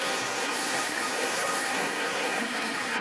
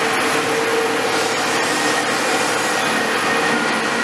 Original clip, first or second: second